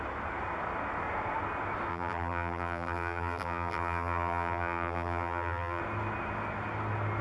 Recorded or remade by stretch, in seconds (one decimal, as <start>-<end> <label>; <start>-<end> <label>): 0.0-1.9 recorded; 1.9-5.8 remade; 5.8-7.2 recorded